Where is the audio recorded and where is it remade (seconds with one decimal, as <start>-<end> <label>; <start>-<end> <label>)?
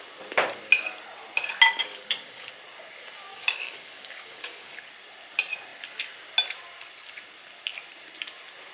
0.0-1.9 recorded; 1.9-2.5 remade; 2.5-3.3 recorded; 3.3-4.8 remade; 4.8-8.7 recorded